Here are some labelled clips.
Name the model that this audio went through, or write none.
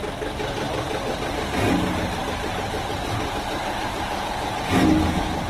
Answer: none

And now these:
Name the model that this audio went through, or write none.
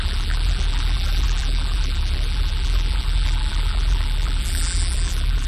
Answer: vocoder, BigVGAN v2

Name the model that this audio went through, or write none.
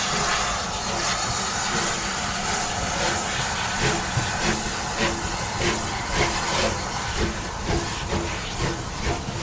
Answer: none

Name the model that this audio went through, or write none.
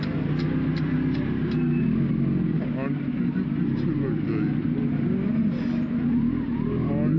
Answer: none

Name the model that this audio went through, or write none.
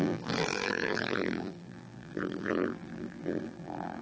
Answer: vocoder, BigVGAN v2